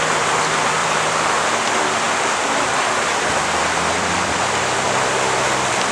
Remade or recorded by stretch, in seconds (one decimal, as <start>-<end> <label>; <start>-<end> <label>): 0.0-0.8 recorded; 0.8-4.3 remade; 4.3-5.9 recorded